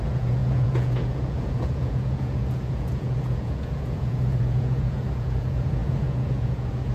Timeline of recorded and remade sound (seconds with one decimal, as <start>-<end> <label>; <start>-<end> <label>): 0.0-6.9 remade